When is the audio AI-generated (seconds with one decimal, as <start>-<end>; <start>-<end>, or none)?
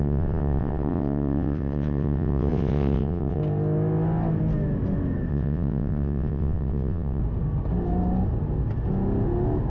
0.0-3.4; 5.3-7.2